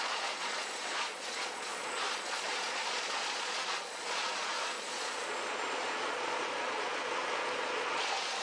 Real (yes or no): no